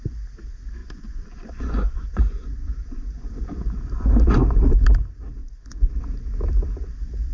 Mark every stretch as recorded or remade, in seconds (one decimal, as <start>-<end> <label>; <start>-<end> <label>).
0.0-0.8 recorded; 0.8-3.3 remade; 3.3-5.4 recorded; 5.4-6.0 remade; 6.0-7.3 recorded